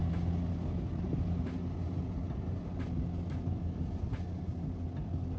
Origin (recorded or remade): recorded